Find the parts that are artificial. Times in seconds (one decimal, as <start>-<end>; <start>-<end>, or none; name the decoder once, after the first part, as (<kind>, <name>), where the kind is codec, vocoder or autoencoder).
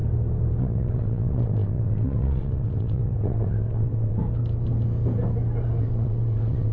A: 0.6-4.2 (vocoder, WaveNeXt); 5.8-6.7